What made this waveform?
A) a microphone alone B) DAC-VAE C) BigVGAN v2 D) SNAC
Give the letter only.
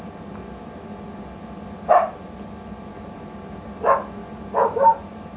A